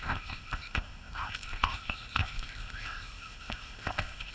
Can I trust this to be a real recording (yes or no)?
no